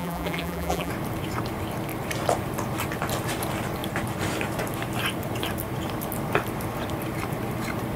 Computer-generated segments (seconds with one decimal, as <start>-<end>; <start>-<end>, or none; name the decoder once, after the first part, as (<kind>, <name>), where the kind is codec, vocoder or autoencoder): 0.0-0.9 (vocoder, BigVGAN v2)